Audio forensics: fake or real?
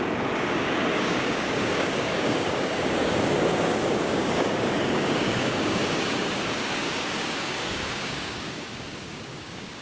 fake